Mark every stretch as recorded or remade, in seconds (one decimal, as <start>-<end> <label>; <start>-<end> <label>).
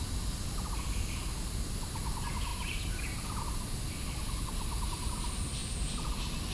0.0-2.5 recorded; 2.5-3.4 remade; 3.4-6.5 recorded